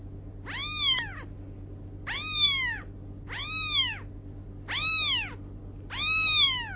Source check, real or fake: real